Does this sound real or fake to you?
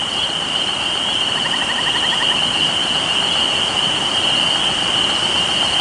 real